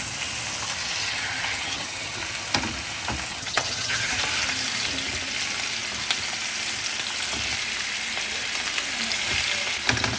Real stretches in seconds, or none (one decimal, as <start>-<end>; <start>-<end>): 0.0-1.0; 2.2-3.3; 4.2-10.2